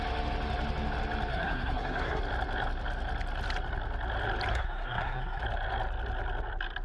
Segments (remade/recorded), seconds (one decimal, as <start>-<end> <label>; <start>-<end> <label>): 0.0-1.3 recorded; 1.3-2.2 remade; 2.2-4.5 recorded; 4.5-5.4 remade; 5.4-6.8 recorded